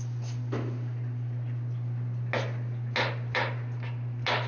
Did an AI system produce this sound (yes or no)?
no